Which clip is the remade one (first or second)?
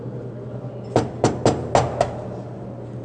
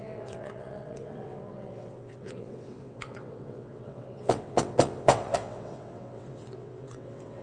second